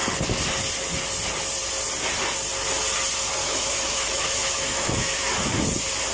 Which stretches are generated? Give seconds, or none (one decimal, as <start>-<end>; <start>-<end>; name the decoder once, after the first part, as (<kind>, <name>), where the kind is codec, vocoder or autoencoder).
3.4-5.6 (autoencoder, DAC-VAE)